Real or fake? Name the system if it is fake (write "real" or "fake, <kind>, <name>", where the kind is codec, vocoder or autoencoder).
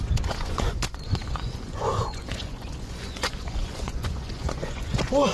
fake, vocoder, Vocos